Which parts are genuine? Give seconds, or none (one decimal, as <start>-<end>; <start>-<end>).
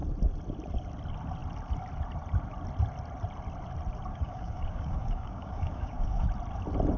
0.0-4.1; 6.2-7.0